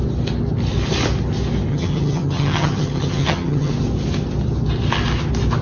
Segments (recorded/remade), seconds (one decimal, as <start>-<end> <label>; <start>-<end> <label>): 0.0-1.7 recorded; 1.7-3.7 remade; 3.7-5.6 recorded